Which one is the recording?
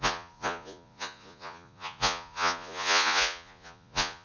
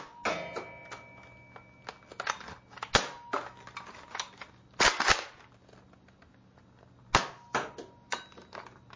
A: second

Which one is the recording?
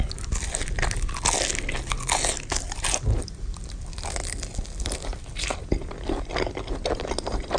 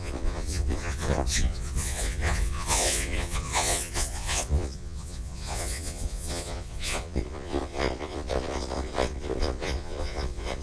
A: first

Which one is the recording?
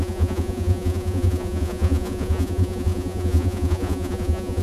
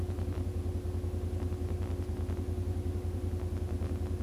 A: second